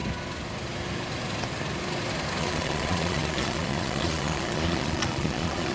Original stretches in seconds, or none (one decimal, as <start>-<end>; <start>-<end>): 0.0-2.4